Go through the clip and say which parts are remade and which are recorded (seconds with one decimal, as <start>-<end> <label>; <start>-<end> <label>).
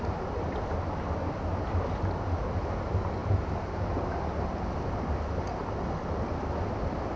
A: 0.0-7.2 recorded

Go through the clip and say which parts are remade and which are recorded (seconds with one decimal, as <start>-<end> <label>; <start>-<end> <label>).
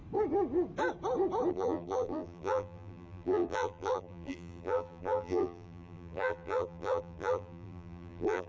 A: 0.0-1.5 recorded; 1.5-8.5 remade